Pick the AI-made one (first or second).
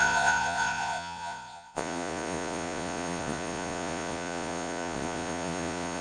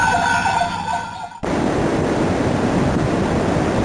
first